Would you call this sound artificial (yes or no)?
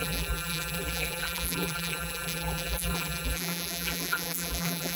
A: yes